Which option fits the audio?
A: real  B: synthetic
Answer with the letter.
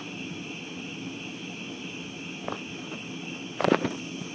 A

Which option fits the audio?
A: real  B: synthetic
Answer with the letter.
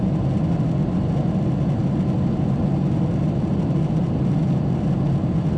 A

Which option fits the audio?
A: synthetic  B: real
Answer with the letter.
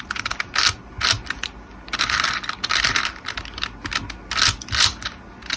B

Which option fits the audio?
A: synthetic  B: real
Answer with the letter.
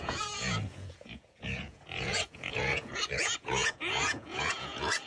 A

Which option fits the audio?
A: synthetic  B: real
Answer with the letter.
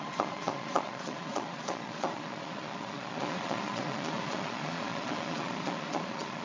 A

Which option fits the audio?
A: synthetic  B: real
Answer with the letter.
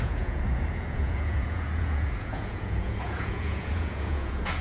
A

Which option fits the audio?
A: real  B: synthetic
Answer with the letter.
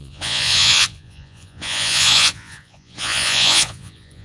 B